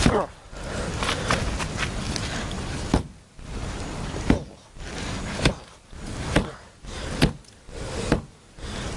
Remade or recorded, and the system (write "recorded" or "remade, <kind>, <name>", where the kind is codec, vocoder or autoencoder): recorded